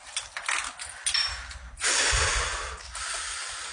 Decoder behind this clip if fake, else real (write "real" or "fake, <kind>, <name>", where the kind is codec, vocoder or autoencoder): real